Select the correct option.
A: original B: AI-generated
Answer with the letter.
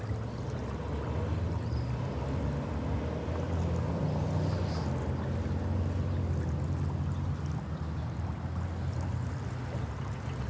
A